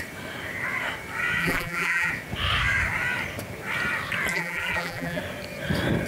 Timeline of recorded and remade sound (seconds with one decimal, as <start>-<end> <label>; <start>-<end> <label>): 0.0-1.4 recorded; 1.4-2.1 remade; 2.1-4.3 recorded; 4.3-5.2 remade; 5.2-6.1 recorded